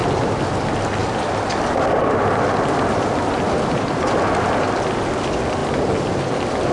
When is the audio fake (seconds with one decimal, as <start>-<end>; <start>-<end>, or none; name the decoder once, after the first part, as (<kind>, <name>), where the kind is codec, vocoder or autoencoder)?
none